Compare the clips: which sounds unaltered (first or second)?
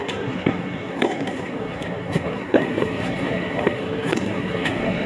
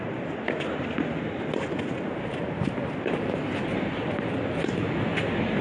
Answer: second